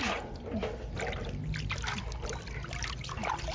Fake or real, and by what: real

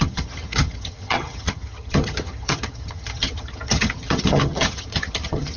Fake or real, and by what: fake, vocoder, HiFi-GAN